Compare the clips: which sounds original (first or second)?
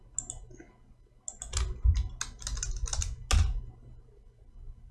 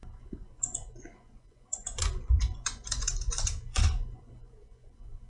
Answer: first